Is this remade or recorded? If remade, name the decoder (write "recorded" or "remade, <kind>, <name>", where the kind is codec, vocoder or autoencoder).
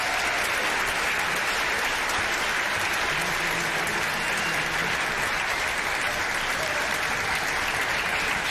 recorded